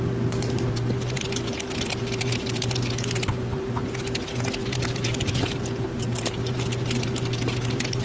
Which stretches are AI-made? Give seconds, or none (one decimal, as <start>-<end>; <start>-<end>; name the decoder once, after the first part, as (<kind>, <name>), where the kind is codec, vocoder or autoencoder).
0.0-3.8 (vocoder, BigVGAN v2); 4.7-8.0